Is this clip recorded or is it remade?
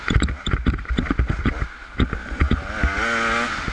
recorded